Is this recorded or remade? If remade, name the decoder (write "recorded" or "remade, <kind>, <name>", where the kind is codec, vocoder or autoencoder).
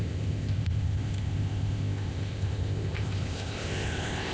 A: remade, codec, ZipCodec